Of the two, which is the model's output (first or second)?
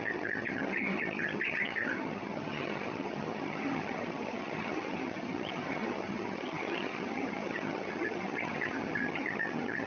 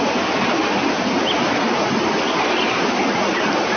first